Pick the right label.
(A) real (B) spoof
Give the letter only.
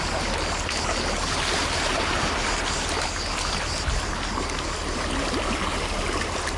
A